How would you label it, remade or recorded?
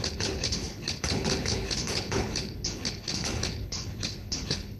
remade